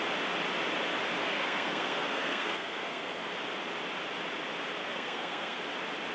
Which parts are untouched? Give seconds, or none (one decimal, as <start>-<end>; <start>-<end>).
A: 0.0-1.2; 3.3-4.8; 5.6-6.1